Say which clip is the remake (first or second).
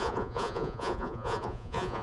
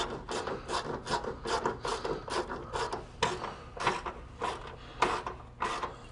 first